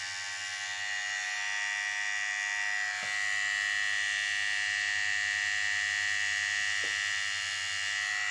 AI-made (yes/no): no